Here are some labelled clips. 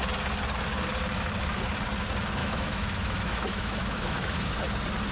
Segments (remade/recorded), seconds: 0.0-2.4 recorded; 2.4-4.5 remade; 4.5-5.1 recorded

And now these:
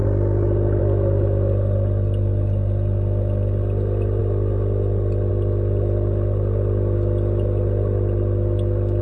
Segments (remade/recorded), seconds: 0.0-9.0 recorded

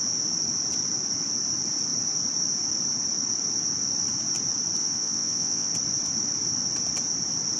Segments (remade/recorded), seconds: 0.0-4.8 recorded; 4.8-5.7 remade; 5.7-7.6 recorded